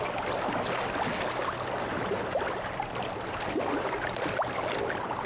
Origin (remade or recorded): recorded